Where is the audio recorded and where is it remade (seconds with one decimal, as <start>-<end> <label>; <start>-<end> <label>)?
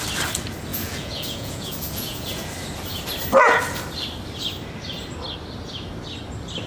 0.0-0.7 recorded; 0.7-2.5 remade; 2.5-6.7 recorded